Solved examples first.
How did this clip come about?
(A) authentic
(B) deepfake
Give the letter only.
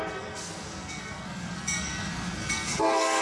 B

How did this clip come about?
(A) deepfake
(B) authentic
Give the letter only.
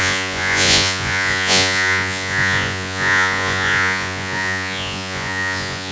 A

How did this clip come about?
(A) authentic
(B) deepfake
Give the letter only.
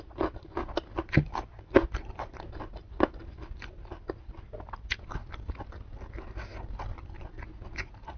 A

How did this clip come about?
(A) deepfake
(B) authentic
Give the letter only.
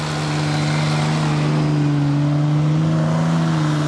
B